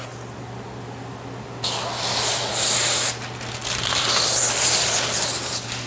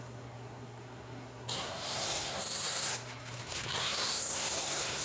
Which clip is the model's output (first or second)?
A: second